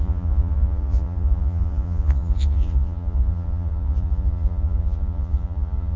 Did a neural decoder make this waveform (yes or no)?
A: yes